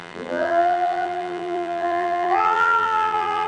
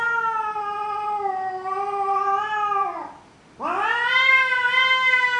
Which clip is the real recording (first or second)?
second